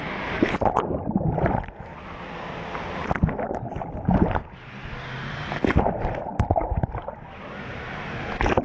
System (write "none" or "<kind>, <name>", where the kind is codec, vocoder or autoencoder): none